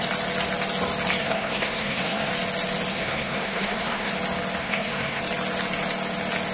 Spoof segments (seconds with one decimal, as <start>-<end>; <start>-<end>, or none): 1.2-2.3; 2.9-4.1; 4.6-5.2

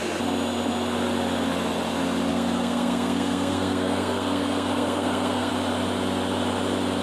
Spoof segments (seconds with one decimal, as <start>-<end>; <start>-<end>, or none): 2.3-5.5

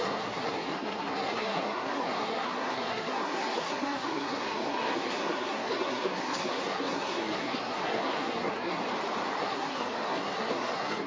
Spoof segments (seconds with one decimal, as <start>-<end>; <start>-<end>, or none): 0.0-8.8; 9.4-11.1

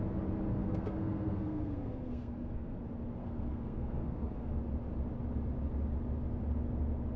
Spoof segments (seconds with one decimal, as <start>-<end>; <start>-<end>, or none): 0.5-2.8; 3.2-4.6

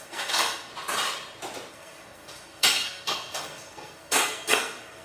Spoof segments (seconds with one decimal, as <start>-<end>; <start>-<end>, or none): 0.0-0.7; 1.7-5.0

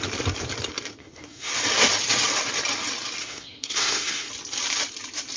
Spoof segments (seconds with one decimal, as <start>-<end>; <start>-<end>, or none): 1.0-1.5; 3.2-4.3

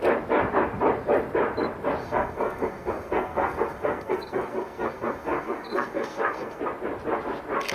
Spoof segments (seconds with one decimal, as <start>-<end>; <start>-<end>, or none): 2.0-6.6

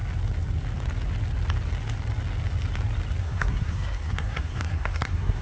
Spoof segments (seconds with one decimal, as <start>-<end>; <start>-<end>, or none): 3.2-5.4